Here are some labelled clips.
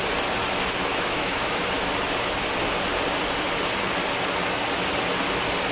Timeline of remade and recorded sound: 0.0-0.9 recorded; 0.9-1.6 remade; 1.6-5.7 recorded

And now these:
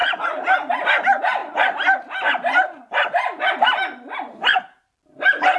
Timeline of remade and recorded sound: 0.0-5.6 recorded

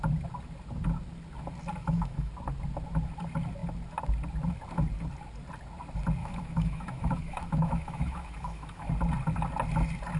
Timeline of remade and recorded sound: 0.0-1.8 recorded; 1.8-2.3 remade; 2.3-6.2 recorded; 6.2-8.9 remade; 8.9-10.2 recorded

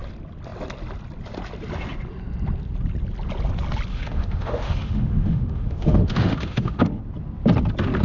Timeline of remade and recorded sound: 0.0-3.9 recorded; 3.9-7.0 remade; 7.0-8.0 recorded

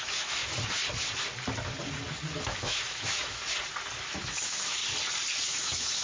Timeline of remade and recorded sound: 0.0-0.4 remade; 0.4-2.4 recorded; 2.4-3.4 remade; 3.4-4.0 recorded; 4.0-4.8 remade; 4.8-5.4 recorded; 5.4-6.0 remade

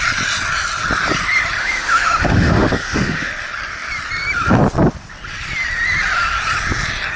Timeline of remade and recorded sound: 0.0-1.6 recorded; 1.6-3.3 remade; 3.3-7.2 recorded